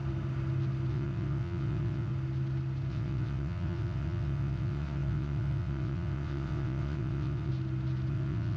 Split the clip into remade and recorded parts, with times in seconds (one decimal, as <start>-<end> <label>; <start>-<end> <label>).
0.0-0.9 recorded; 0.9-2.1 remade; 2.1-2.9 recorded; 2.9-7.5 remade; 7.5-8.1 recorded; 8.1-8.6 remade